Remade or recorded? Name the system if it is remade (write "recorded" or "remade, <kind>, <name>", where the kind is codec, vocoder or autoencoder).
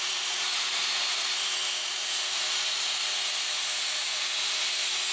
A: remade, vocoder, Vocos